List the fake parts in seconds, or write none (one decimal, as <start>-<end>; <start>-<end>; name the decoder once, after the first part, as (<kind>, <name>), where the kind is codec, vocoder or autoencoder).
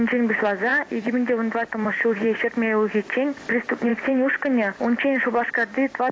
0.7-2.5 (vocoder, BigVGAN v2); 3.9-5.2